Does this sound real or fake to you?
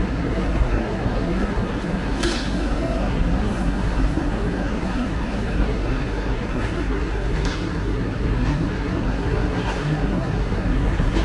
fake